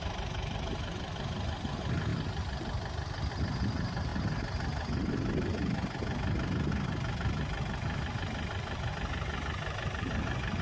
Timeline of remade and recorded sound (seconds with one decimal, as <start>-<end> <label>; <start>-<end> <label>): 0.0-10.6 recorded